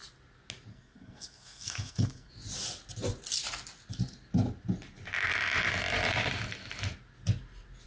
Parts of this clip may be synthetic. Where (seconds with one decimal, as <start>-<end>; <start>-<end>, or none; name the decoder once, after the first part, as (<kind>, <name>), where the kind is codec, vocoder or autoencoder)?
0.7-2.3 (codec, SNAC)